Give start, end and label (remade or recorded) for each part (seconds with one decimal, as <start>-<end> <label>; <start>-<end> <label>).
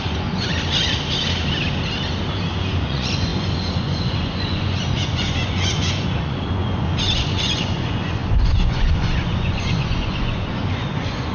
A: 0.0-0.5 remade; 0.5-2.5 recorded; 2.5-11.3 remade